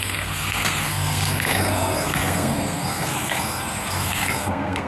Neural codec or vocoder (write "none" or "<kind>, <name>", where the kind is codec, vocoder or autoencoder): codec, SNAC